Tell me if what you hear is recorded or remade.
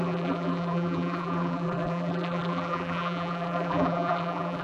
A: remade